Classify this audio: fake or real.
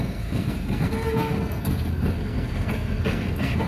fake